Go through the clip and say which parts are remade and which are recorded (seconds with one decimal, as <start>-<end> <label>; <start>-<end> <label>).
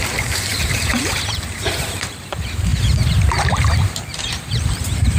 0.0-5.2 remade